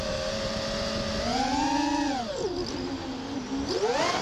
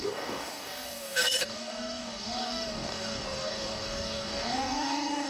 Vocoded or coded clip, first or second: second